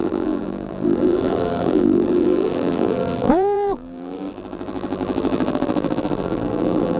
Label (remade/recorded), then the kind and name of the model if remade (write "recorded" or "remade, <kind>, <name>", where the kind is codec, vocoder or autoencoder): remade, vocoder, BigVGAN v2